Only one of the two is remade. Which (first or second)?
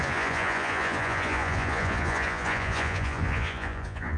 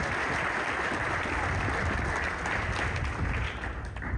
first